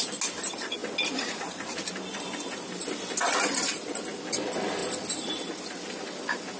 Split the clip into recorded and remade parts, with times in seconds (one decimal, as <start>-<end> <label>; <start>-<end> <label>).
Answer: 0.0-6.6 recorded